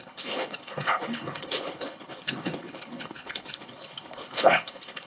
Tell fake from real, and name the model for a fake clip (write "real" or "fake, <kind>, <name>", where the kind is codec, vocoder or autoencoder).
fake, codec, HILCodec